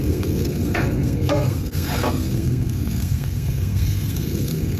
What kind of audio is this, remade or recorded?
remade